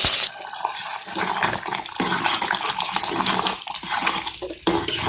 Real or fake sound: real